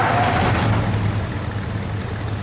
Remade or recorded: recorded